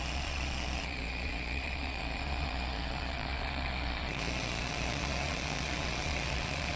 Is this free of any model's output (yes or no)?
no